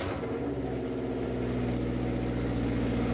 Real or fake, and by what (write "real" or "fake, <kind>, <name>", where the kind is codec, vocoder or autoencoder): real